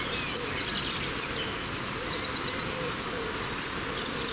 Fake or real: real